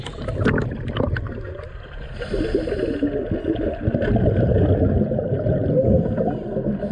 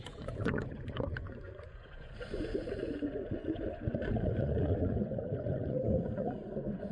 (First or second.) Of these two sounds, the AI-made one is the second